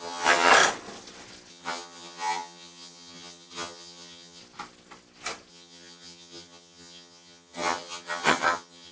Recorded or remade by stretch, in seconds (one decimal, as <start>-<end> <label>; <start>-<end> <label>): 0.0-0.5 remade; 0.5-1.5 recorded; 1.5-4.4 remade; 4.4-5.5 recorded; 5.5-8.9 remade